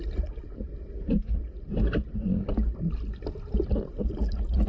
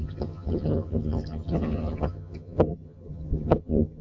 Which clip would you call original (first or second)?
first